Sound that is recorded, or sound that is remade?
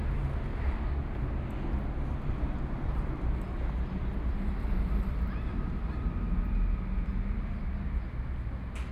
recorded